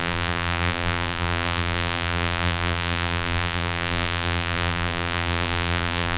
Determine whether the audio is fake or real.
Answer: fake